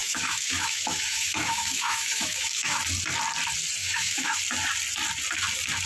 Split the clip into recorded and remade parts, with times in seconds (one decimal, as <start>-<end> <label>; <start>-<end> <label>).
0.0-2.8 remade; 2.8-3.8 recorded; 3.8-4.4 remade; 4.4-5.8 recorded